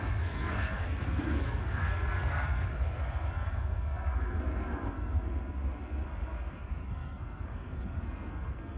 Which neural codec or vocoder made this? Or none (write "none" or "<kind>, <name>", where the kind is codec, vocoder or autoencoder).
codec, SNAC